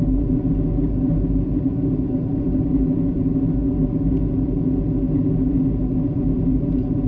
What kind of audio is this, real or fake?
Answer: real